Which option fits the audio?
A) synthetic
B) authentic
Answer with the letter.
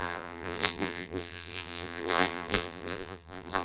A